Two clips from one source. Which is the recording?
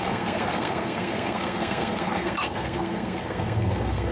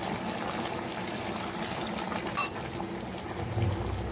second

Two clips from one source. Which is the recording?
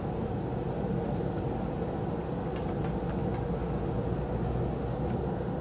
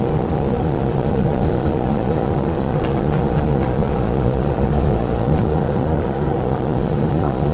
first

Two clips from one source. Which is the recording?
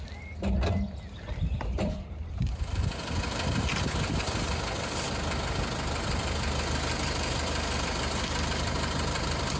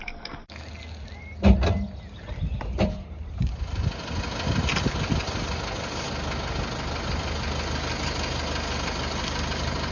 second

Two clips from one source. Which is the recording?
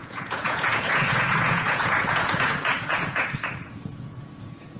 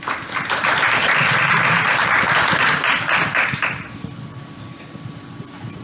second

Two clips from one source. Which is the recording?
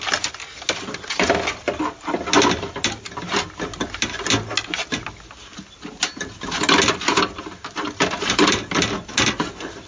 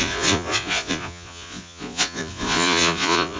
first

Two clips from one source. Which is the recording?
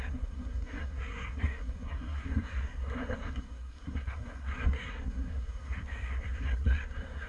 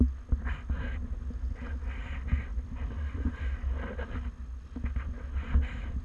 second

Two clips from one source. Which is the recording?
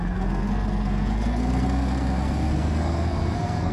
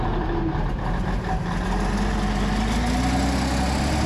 second